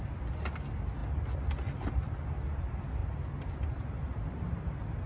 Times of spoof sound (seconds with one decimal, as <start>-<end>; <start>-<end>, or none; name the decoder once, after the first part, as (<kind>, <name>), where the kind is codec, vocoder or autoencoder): none